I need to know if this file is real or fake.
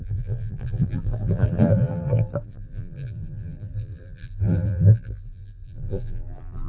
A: fake